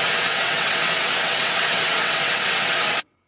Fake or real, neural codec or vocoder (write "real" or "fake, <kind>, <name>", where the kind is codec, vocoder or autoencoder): fake, vocoder, WaveNeXt